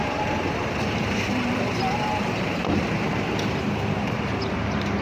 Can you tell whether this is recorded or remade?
remade